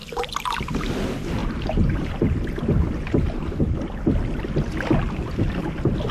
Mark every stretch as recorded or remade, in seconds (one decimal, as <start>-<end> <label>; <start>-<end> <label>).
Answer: 0.0-1.4 recorded; 1.4-2.1 remade; 2.1-6.1 recorded